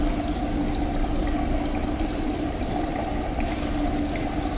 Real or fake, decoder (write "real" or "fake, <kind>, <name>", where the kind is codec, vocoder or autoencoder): real